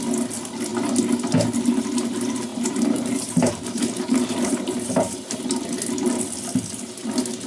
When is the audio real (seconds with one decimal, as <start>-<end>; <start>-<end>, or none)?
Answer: 0.0-2.5; 5.4-7.5